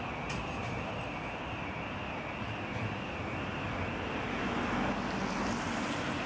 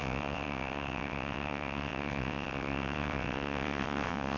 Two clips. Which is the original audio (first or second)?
first